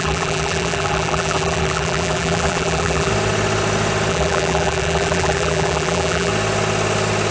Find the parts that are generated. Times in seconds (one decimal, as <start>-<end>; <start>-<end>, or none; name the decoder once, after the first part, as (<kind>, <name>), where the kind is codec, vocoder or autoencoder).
0.0-3.1 (vocoder, BigVGAN v2); 4.1-6.3